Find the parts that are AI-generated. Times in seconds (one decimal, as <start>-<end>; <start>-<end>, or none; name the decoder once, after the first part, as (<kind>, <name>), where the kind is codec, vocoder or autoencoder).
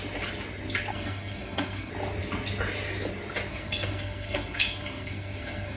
0.9-1.9 (codec, SNAC); 3.5-5.8